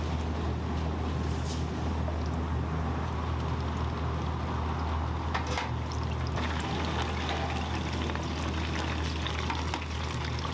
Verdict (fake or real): real